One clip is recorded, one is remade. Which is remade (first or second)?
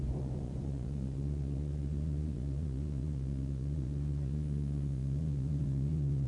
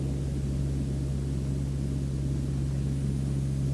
first